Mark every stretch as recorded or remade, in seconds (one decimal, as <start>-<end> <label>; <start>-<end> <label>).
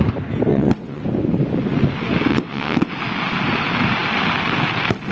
0.0-0.5 recorded; 0.5-1.0 remade; 1.0-2.3 recorded; 2.3-2.9 remade; 2.9-5.1 recorded